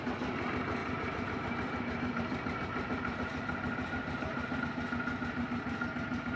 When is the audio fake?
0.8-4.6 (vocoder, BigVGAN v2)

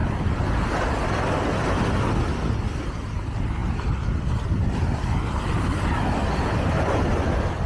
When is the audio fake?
none

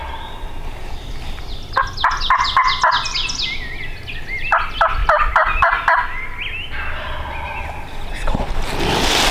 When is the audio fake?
none

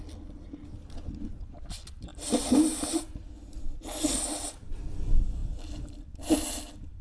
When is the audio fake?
none

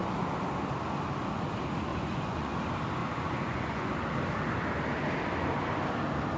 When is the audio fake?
1.9-2.6 (vocoder, Vocos); 3.0-3.9

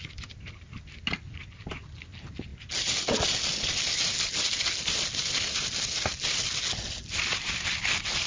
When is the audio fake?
none